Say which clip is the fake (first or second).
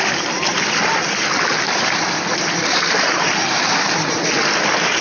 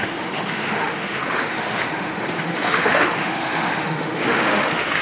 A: second